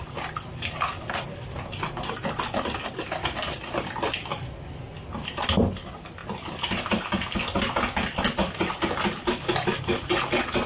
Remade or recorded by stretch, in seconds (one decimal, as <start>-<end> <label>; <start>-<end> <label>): 0.0-10.7 recorded